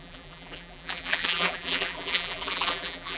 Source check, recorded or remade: remade